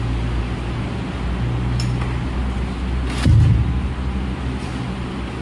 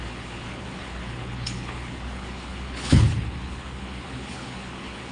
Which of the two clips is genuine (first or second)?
first